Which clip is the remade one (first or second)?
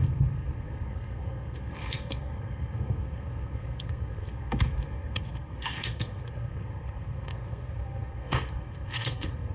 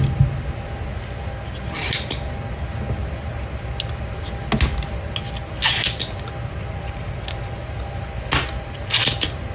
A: first